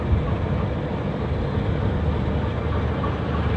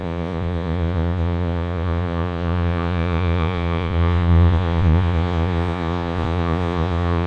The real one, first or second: first